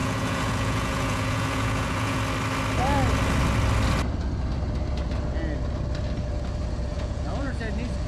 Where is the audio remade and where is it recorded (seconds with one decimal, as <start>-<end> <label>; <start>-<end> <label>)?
0.0-2.2 remade; 2.2-6.9 recorded; 6.9-7.6 remade; 7.6-8.1 recorded